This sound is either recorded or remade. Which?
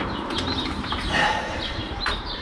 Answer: remade